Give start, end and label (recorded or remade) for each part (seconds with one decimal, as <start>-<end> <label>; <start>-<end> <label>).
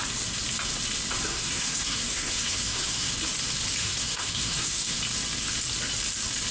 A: 0.0-1.3 recorded; 1.3-3.1 remade; 3.1-3.8 recorded; 3.8-5.0 remade; 5.0-6.5 recorded